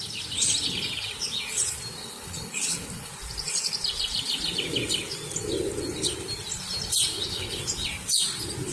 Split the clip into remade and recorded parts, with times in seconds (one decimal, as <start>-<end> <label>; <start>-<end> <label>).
0.0-2.0 recorded; 2.0-3.1 remade; 3.1-7.1 recorded; 7.1-7.6 remade; 7.6-8.7 recorded